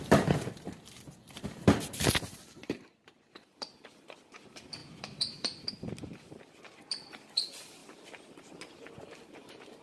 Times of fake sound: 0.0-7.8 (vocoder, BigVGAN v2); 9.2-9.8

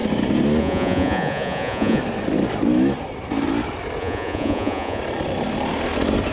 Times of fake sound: 0.6-2.0 (vocoder, Vocos); 4.0-5.0